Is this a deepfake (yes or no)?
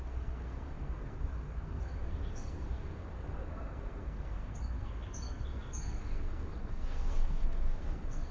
yes